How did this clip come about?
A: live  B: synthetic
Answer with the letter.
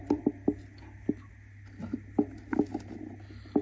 A